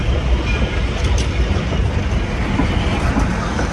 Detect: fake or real real